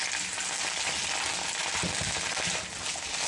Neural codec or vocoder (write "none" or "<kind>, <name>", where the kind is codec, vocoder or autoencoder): none